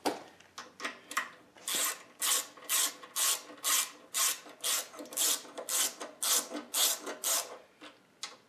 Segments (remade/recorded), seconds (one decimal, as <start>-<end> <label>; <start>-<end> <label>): 0.0-8.5 recorded